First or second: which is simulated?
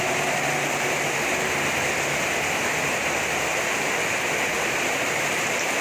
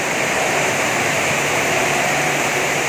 second